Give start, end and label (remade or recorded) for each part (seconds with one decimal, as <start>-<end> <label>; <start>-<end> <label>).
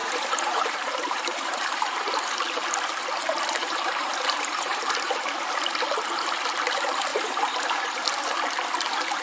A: 0.0-2.3 remade; 2.3-3.6 recorded; 3.6-5.1 remade; 5.1-7.1 recorded; 7.1-8.0 remade; 8.0-9.2 recorded